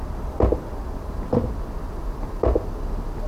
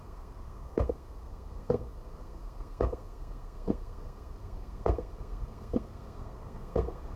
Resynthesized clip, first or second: second